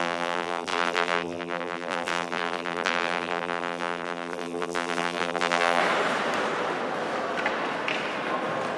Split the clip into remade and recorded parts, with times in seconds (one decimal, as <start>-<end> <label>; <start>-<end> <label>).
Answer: 0.0-5.8 remade; 5.8-8.8 recorded